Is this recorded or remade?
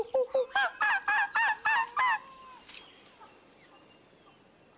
recorded